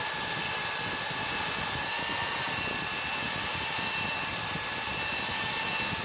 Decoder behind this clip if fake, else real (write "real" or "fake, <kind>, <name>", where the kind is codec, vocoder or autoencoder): real